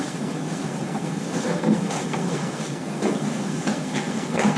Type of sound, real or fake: fake